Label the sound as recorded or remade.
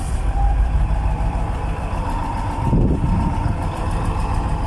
remade